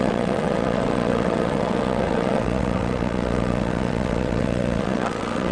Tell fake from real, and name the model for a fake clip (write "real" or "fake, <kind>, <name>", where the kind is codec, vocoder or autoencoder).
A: fake, vocoder, WaveNeXt